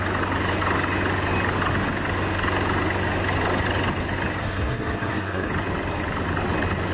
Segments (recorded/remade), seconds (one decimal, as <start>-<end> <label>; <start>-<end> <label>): 0.0-4.4 recorded; 4.4-5.5 remade; 5.5-6.9 recorded